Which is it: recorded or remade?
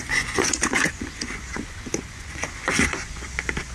remade